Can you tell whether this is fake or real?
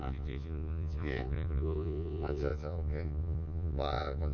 fake